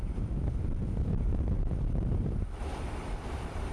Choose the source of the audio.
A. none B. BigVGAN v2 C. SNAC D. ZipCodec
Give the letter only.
B